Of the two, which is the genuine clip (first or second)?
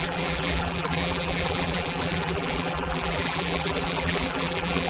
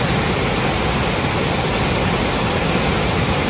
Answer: second